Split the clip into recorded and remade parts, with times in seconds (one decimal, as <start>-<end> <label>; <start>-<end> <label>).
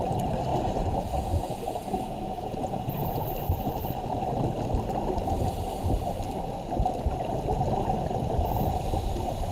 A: 0.0-0.5 recorded; 0.5-3.3 remade; 3.3-9.5 recorded